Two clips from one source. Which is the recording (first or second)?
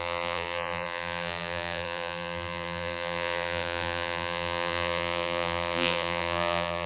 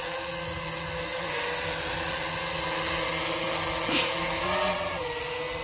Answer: second